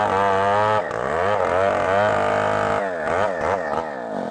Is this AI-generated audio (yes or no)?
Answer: no